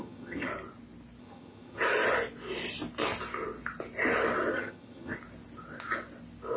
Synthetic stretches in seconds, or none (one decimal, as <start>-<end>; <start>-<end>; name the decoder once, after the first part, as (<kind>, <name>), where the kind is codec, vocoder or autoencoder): 0.0-0.5 (vocoder, HiFi-GAN); 1.2-1.8; 4.5-5.1

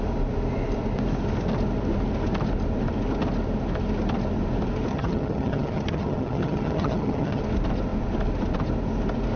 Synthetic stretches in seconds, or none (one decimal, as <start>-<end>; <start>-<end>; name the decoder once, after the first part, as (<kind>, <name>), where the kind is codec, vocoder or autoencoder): 4.9-7.4 (vocoder, HiFi-GAN)